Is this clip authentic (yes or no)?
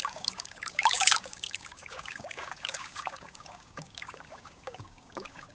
no